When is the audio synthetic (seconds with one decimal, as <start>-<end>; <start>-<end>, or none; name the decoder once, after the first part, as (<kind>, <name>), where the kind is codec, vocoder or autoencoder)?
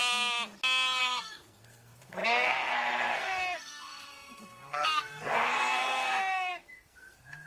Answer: 1.0-7.5 (codec, SNAC)